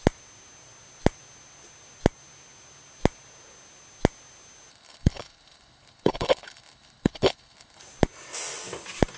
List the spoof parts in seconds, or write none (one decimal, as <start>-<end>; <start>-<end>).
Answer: 4.7-7.8